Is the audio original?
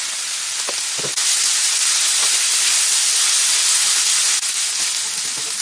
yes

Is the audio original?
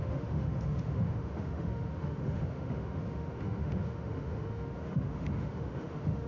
no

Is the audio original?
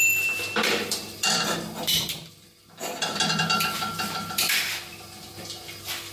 no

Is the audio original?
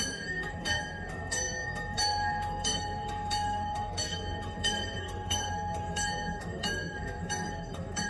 no